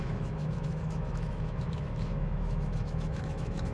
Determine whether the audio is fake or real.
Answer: fake